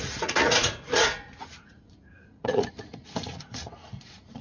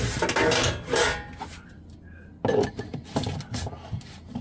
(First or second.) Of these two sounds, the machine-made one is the first